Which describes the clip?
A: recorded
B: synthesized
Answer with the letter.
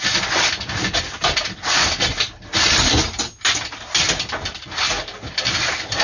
A